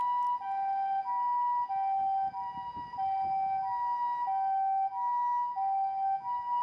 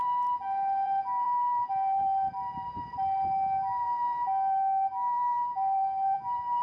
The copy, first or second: second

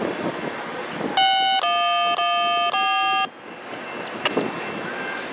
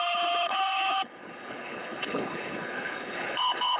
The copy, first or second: second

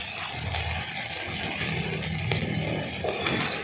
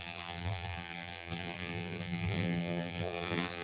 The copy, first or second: second